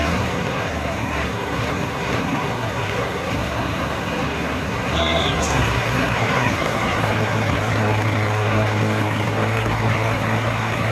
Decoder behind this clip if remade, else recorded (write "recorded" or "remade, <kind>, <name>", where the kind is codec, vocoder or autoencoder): remade, codec, SNAC